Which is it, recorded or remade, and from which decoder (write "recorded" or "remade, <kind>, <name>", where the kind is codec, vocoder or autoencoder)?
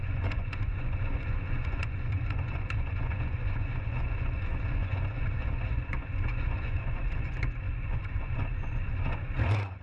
remade, vocoder, Vocos